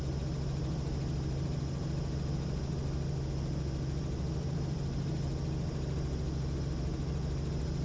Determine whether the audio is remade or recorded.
recorded